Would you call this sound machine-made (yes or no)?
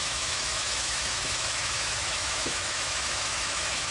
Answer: yes